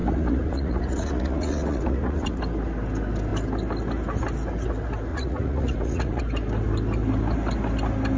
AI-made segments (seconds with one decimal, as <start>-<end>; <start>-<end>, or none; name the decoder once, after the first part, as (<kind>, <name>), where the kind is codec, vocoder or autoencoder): 0.0-2.4 (vocoder, Vocos); 5.1-6.2